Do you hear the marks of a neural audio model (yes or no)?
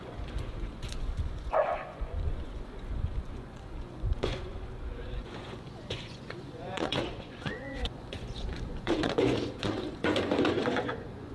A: yes